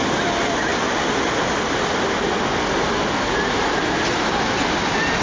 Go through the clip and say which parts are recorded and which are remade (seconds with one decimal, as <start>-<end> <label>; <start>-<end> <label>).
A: 0.0-5.2 recorded